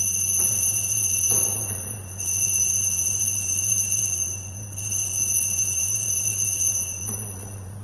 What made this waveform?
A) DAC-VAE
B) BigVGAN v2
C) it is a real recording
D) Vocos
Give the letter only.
D